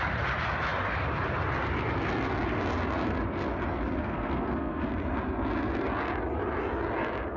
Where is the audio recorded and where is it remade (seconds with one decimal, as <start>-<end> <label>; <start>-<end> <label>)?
0.0-4.0 recorded; 4.0-4.9 remade; 4.9-7.4 recorded